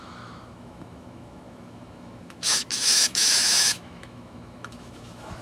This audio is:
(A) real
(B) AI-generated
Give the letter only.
B